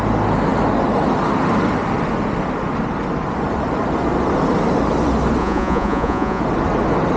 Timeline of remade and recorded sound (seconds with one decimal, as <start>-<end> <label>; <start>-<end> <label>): 0.0-5.4 recorded; 5.4-6.4 remade; 6.4-7.2 recorded